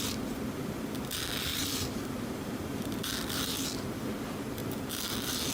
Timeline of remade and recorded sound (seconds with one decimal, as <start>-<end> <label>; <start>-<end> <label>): 0.0-1.5 recorded; 1.5-2.8 remade; 2.8-5.5 recorded